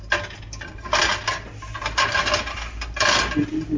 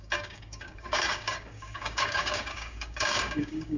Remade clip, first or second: second